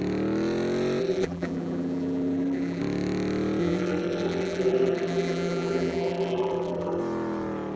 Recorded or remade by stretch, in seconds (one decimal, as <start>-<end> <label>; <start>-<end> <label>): 0.0-1.0 recorded; 1.0-2.8 remade; 2.8-3.6 recorded; 3.6-7.0 remade; 7.0-7.8 recorded